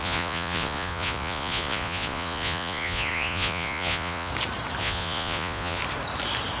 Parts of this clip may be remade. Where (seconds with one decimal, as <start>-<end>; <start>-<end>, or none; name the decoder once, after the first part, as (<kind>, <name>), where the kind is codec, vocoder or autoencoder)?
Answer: 0.0-4.3 (vocoder, Vocos); 4.8-5.8